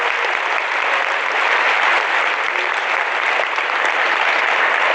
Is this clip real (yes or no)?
yes